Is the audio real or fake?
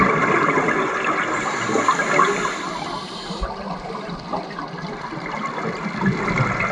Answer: real